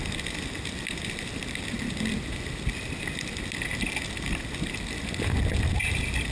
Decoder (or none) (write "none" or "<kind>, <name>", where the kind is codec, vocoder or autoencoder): none